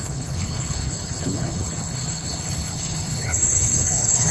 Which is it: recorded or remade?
remade